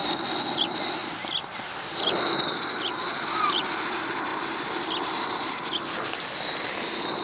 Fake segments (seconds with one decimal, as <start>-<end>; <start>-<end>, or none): 4.3-5.5